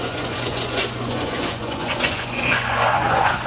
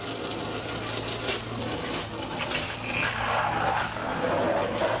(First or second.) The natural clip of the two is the second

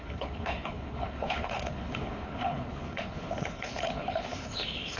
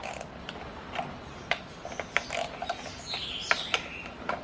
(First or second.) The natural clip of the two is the second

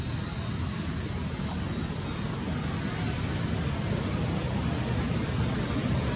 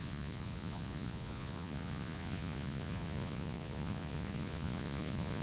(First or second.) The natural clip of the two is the first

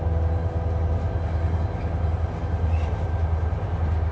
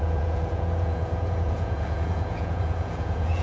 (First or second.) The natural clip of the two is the first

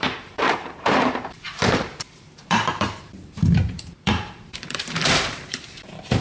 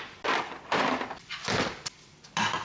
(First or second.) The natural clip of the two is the second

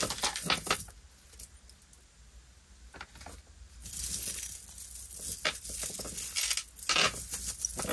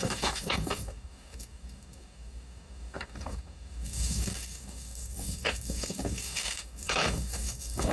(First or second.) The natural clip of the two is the first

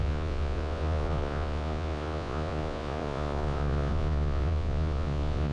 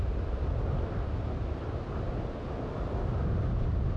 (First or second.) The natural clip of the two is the second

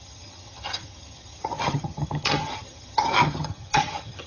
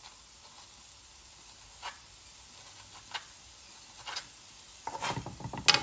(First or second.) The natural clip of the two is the second